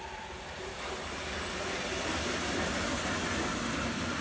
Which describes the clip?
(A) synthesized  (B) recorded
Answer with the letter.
B